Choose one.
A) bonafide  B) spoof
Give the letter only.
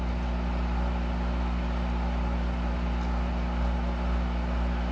A